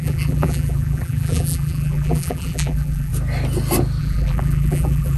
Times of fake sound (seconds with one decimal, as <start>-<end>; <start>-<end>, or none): 0.0-3.1; 4.0-5.2